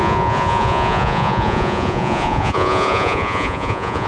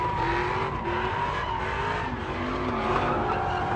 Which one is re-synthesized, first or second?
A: first